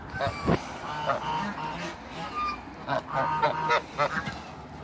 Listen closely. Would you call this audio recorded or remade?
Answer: recorded